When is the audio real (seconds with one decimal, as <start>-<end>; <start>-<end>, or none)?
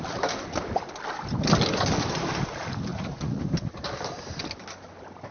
0.0-2.9; 3.4-5.3